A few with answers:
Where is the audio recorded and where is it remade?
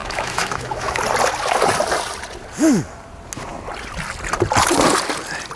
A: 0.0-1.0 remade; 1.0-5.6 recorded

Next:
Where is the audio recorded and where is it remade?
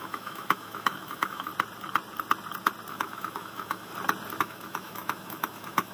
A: 0.0-1.5 remade; 1.5-2.9 recorded; 2.9-3.9 remade; 3.9-4.4 recorded; 4.4-5.9 remade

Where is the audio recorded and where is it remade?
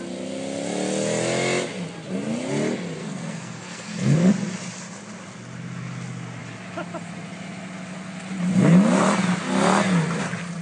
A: 0.0-3.0 recorded; 3.0-4.3 remade; 4.3-10.6 recorded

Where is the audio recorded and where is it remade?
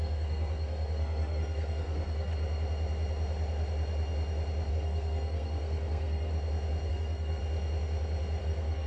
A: 0.0-2.3 remade; 2.3-4.7 recorded; 4.7-6.3 remade; 6.3-6.9 recorded; 6.9-7.4 remade; 7.4-8.4 recorded; 8.4-8.9 remade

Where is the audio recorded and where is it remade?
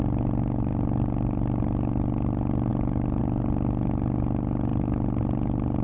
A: 0.0-5.8 recorded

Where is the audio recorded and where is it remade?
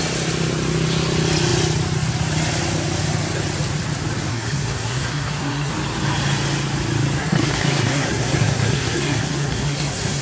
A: 0.0-4.3 recorded; 4.3-5.7 remade; 5.7-7.2 recorded; 7.2-10.2 remade